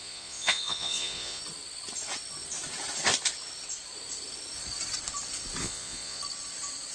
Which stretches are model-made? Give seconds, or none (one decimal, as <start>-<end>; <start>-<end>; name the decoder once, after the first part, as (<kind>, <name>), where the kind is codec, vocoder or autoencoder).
0.0-1.4 (vocoder, Vocos); 5.6-6.2